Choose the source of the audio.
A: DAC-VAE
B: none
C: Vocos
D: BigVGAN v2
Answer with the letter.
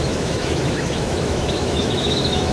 A